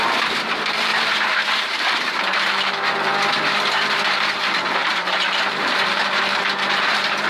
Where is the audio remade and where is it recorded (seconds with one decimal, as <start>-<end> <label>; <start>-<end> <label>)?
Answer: 0.0-0.9 remade; 0.9-1.6 recorded; 1.6-3.1 remade; 3.1-3.9 recorded; 3.9-7.3 remade